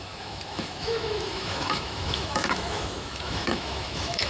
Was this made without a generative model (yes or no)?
no